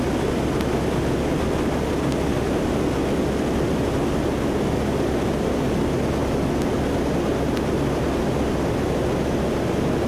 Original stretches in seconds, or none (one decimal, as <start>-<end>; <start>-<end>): 0.0-10.1